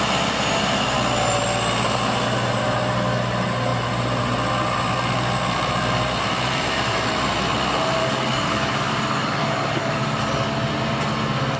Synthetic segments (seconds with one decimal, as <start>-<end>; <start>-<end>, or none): 8.0-10.2